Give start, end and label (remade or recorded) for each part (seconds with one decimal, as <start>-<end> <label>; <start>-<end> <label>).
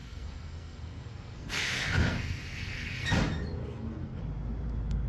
0.0-3.1 remade; 3.1-3.6 recorded; 3.6-4.2 remade; 4.2-5.1 recorded